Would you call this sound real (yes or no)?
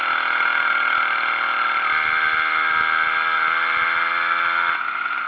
yes